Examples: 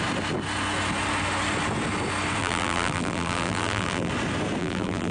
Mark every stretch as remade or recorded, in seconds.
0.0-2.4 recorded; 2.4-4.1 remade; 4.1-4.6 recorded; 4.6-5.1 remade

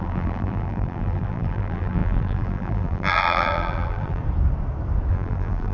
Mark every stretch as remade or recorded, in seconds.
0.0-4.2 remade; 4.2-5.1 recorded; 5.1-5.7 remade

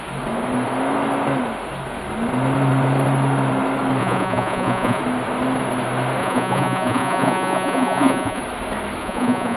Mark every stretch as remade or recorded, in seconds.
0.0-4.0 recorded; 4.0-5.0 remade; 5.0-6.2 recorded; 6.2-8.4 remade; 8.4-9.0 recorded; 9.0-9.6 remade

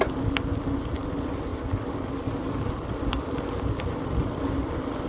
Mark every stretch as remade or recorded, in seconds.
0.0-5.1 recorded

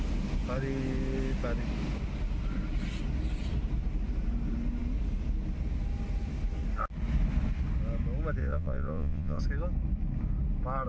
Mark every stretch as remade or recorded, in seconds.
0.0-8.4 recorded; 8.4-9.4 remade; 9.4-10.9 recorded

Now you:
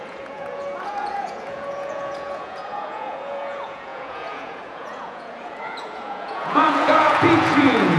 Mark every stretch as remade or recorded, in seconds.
0.0-8.0 remade

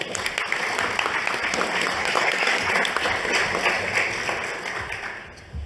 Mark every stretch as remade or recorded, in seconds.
0.0-2.0 recorded; 2.0-2.7 remade; 2.7-5.7 recorded

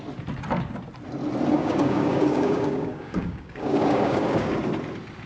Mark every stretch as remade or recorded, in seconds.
0.0-1.5 recorded; 1.5-4.6 remade; 4.6-5.3 recorded